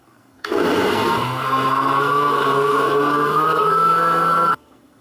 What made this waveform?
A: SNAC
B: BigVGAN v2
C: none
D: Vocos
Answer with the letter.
A